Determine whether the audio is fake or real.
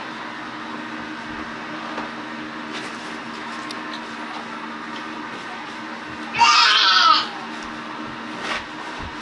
real